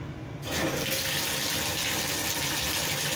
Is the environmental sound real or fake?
real